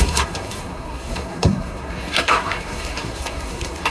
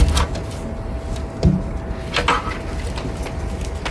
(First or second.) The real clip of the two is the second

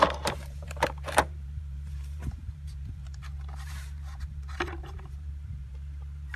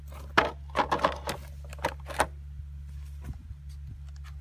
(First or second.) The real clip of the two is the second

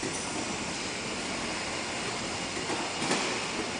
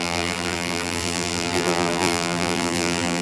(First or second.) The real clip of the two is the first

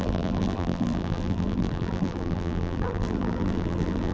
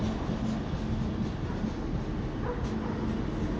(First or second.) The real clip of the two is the second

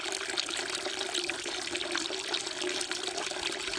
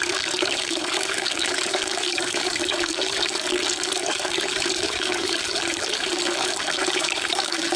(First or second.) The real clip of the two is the first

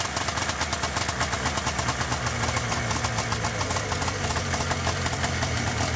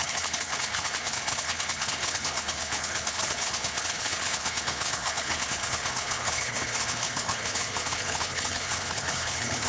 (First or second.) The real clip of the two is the first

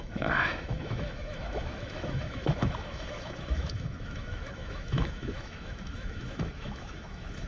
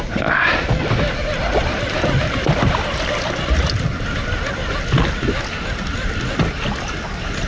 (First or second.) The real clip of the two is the second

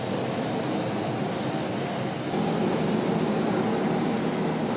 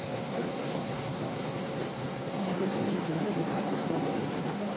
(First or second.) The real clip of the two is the first